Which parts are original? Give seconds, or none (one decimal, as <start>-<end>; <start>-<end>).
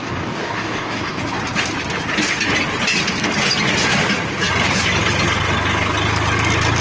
1.2-6.8